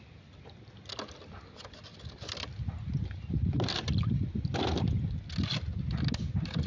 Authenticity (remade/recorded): recorded